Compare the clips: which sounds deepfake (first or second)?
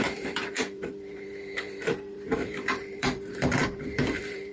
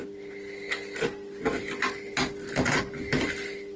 first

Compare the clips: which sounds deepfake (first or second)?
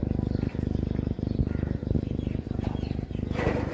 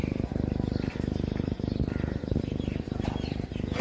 second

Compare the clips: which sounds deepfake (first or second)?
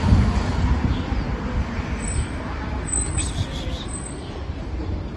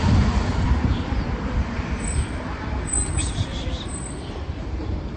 second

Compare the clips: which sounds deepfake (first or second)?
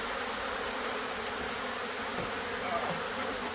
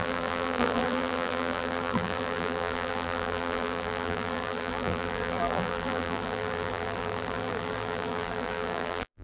second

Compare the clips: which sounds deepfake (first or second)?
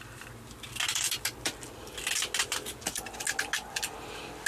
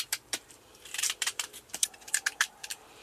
second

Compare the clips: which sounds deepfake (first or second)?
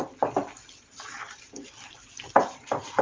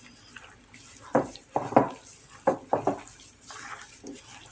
first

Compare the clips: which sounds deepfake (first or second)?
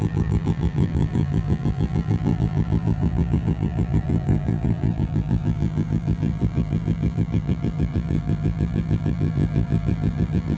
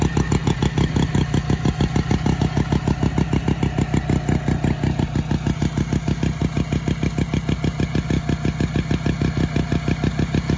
first